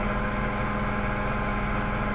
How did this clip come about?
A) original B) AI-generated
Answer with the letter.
A